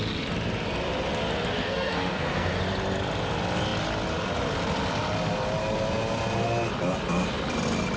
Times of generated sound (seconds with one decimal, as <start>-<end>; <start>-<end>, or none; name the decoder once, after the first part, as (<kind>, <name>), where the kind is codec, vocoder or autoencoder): 1.6-2.6 (codec, SNAC)